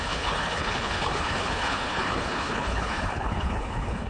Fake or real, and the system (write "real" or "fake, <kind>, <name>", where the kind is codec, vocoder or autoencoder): fake, codec, HILCodec